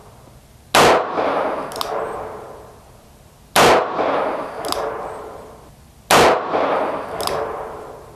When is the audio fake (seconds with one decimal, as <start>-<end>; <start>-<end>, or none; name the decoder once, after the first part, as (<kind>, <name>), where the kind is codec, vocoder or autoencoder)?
none